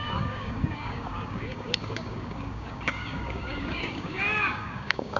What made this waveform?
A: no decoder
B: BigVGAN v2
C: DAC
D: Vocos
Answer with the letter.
C